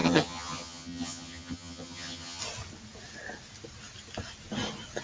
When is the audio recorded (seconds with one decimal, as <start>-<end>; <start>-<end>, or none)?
2.4-5.0